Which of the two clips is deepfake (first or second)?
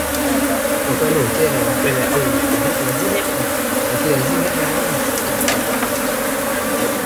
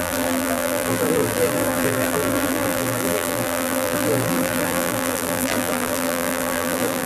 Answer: second